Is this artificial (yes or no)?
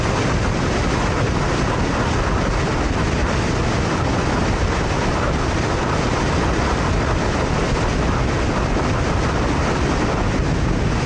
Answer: no